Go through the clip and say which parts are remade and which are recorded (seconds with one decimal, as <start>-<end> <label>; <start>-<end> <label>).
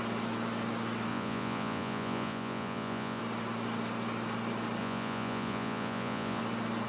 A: 0.0-1.1 recorded; 1.1-3.2 remade; 3.2-4.8 recorded; 4.8-6.4 remade; 6.4-6.9 recorded